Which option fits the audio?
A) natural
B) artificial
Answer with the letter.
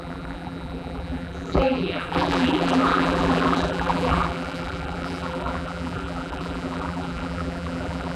B